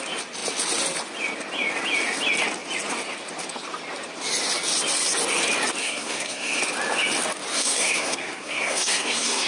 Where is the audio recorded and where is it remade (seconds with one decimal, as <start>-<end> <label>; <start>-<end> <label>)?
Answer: 0.0-5.8 recorded; 5.8-6.6 remade; 6.6-7.5 recorded; 7.5-9.5 remade